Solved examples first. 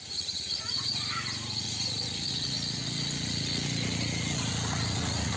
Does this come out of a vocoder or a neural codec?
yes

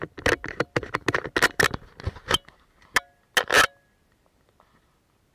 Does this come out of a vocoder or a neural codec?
no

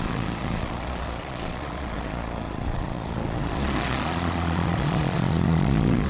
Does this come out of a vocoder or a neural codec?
yes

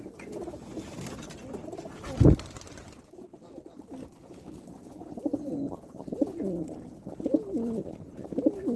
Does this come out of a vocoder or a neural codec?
no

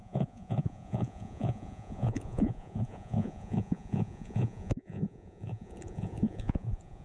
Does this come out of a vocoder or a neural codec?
yes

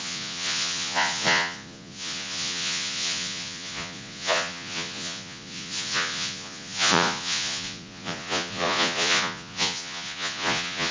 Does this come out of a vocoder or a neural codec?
yes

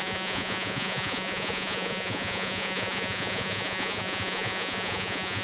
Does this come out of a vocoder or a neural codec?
yes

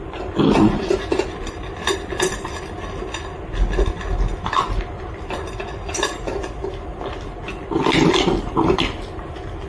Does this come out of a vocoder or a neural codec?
no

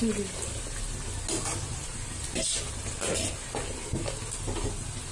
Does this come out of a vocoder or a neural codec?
no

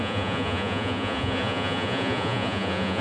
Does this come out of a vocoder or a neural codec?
yes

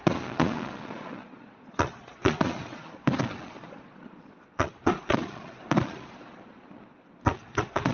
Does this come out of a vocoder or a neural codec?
yes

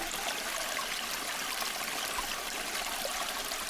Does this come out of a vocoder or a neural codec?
no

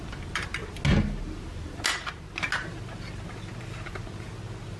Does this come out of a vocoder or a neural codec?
no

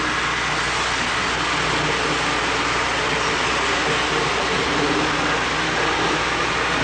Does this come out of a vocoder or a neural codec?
no